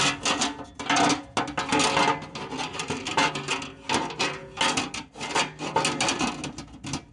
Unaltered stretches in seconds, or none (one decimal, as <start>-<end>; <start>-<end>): 0.0-2.7; 3.3-7.1